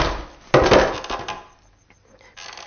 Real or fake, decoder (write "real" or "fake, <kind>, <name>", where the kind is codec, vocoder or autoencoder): real